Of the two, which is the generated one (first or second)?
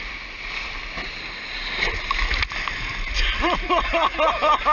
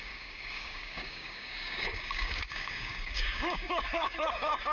second